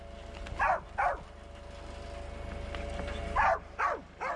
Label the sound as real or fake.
real